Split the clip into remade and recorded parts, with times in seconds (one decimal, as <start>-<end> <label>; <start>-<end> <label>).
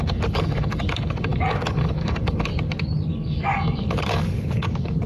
0.0-2.5 remade; 2.5-3.1 recorded; 3.1-5.1 remade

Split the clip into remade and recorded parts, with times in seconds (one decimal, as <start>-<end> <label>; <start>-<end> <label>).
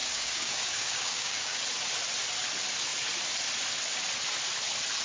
0.0-1.6 remade; 1.6-5.0 recorded